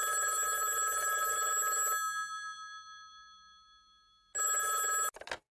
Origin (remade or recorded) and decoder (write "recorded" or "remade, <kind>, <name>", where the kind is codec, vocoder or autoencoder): recorded